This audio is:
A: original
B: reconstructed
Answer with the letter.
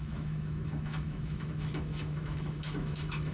B